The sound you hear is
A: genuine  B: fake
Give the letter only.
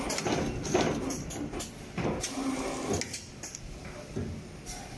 A